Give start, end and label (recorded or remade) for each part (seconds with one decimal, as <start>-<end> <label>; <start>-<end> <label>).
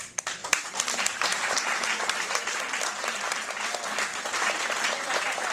0.0-0.4 recorded; 0.4-2.6 remade; 2.6-5.5 recorded